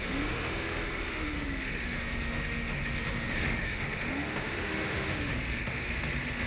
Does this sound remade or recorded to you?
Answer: remade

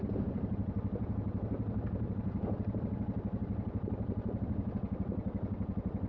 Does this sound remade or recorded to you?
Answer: recorded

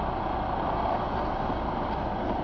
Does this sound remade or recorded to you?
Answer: recorded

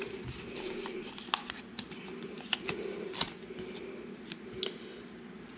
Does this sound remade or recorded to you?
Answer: recorded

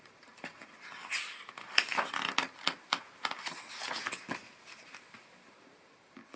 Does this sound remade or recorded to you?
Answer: recorded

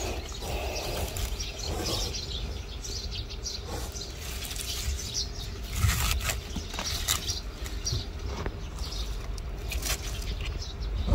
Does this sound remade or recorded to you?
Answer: recorded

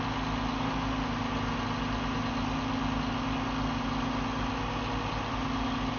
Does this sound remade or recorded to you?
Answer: recorded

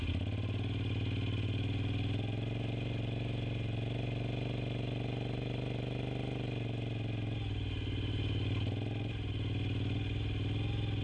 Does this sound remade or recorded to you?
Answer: recorded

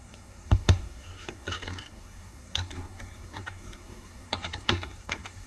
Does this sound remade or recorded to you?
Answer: remade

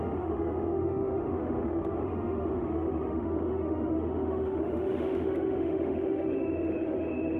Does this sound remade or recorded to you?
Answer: remade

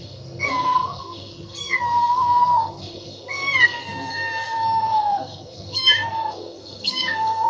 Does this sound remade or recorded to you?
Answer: remade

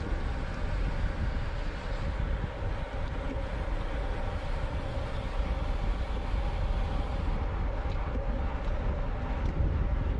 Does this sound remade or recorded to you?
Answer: recorded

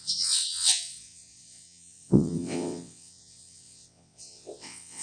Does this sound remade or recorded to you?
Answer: remade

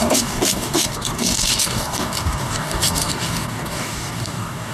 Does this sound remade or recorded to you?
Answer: remade